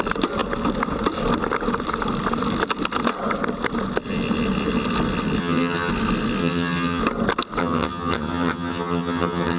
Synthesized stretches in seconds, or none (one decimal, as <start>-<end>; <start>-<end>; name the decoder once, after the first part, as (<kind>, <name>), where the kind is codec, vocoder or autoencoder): 5.4-5.9 (vocoder, HiFi-GAN); 6.4-7.0; 7.6-9.6